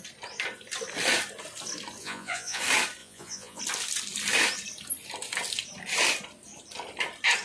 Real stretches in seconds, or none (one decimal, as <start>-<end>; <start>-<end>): 0.0-2.0; 2.6-3.0; 3.6-7.4